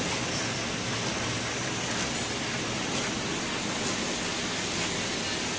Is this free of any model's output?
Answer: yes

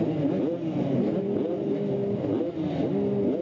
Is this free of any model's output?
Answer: yes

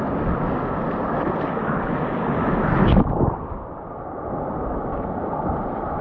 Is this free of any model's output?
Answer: yes